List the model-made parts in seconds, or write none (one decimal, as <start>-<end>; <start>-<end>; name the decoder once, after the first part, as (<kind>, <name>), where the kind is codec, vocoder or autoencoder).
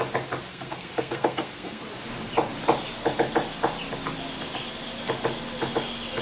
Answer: 0.5-1.8 (codec, SNAC)